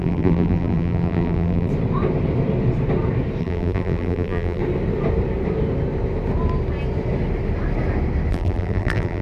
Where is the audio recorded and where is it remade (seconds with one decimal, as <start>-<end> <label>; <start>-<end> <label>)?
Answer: 0.0-1.7 remade; 1.7-3.4 recorded; 3.4-4.6 remade; 4.6-8.3 recorded; 8.3-9.2 remade